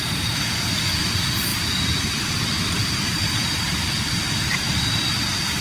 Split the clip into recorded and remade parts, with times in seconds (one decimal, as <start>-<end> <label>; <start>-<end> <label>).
0.0-1.5 recorded; 1.5-4.9 remade; 4.9-5.6 recorded